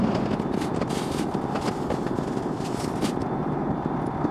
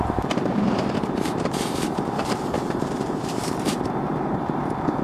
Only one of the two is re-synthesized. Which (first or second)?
second